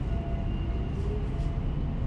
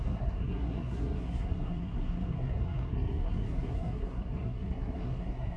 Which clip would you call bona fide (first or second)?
first